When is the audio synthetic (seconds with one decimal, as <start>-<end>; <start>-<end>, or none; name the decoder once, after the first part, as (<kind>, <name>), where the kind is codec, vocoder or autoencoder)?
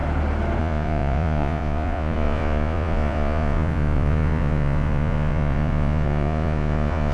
0.6-7.1 (vocoder, Vocos)